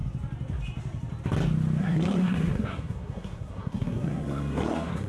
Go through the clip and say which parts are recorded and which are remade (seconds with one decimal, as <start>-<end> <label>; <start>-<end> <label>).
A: 0.0-1.8 recorded; 1.8-5.1 remade